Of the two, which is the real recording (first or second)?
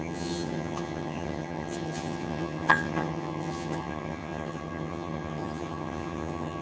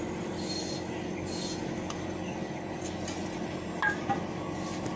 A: second